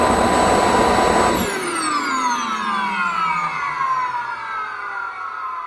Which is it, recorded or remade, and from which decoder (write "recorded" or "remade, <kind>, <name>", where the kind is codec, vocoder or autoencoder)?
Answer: recorded